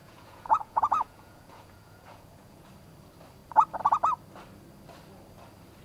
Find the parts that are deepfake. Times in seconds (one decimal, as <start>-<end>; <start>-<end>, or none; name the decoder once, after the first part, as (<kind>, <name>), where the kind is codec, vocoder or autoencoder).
0.0-2.7 (vocoder, Vocos)